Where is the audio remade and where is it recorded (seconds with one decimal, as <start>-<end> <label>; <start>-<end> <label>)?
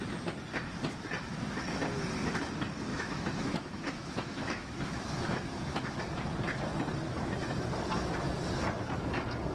0.0-1.2 recorded; 1.2-1.8 remade; 1.8-2.9 recorded; 2.9-6.0 remade; 6.0-9.5 recorded